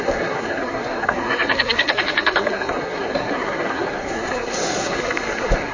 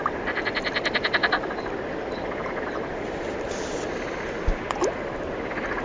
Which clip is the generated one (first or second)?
first